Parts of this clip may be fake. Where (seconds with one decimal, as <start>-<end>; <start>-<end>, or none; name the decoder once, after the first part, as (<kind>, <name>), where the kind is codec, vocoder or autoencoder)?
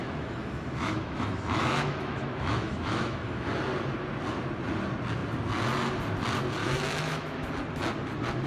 0.0-3.5 (autoencoder, DAC-VAE); 6.6-7.5